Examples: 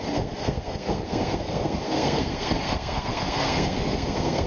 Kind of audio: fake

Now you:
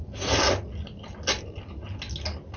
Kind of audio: real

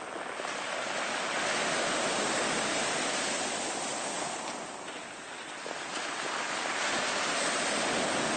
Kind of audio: real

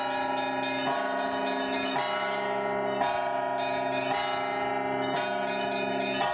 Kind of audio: real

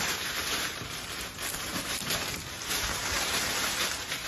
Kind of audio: fake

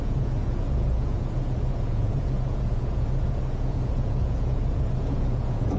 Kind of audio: fake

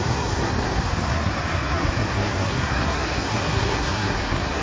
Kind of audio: fake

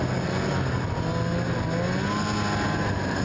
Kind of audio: real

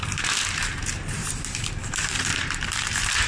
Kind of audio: fake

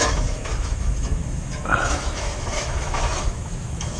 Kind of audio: fake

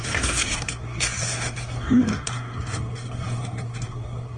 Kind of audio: fake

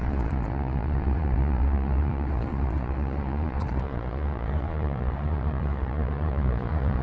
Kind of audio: fake